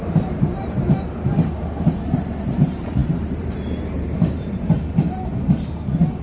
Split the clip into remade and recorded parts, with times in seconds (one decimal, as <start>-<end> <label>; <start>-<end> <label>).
0.0-5.3 remade; 5.3-6.2 recorded